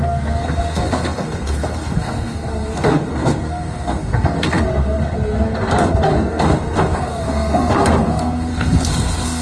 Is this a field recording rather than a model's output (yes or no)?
no